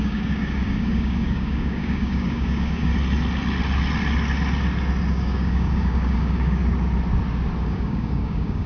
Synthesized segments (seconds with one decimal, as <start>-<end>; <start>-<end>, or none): 0.0-2.9; 5.1-6.6; 7.6-8.7